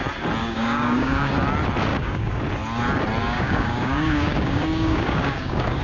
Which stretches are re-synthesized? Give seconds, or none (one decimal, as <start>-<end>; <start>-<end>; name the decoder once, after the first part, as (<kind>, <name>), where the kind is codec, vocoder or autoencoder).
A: 0.4-1.3 (codec, DAC); 1.9-2.4; 3.2-5.8